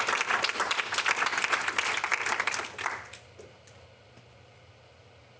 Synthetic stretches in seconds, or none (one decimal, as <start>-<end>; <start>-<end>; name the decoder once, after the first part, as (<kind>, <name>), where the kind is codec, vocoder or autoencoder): none